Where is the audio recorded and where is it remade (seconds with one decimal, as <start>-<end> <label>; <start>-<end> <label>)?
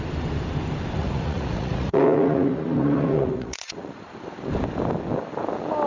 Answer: 0.0-1.0 recorded; 1.0-4.0 remade; 4.0-5.9 recorded